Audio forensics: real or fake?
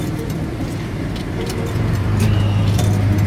fake